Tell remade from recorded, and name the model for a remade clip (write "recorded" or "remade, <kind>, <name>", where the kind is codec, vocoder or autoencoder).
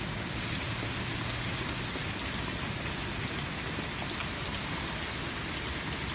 recorded